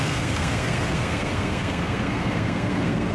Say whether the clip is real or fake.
fake